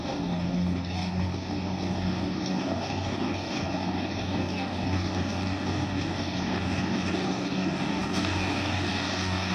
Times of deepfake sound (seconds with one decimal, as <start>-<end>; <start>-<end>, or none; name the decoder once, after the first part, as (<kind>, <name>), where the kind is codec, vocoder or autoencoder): 0.0-9.5 (codec, DAC)

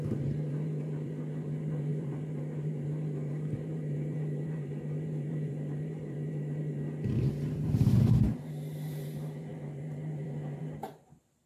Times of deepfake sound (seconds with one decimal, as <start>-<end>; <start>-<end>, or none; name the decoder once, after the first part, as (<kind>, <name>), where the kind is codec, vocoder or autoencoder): 0.0-11.5 (vocoder, BigVGAN v2)

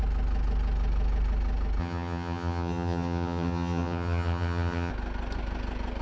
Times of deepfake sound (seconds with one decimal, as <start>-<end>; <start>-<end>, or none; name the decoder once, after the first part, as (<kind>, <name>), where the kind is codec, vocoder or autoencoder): 1.8-4.9 (vocoder, HiFi-GAN)

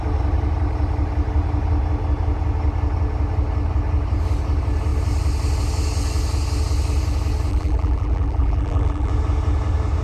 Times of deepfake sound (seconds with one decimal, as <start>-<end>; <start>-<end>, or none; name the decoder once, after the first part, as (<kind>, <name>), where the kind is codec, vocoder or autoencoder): 7.5-9.1 (vocoder, BigVGAN v2)

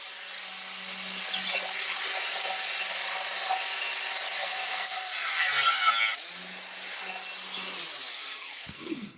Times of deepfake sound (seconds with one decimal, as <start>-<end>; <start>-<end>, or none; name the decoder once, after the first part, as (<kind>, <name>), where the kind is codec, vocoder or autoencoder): 4.4-5.9 (codec, SNAC); 8.1-9.2